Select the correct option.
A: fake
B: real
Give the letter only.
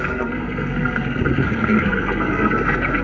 A